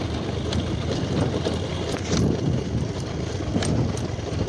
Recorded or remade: recorded